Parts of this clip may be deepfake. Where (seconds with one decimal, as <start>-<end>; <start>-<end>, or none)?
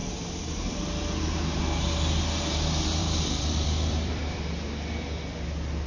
3.0-4.4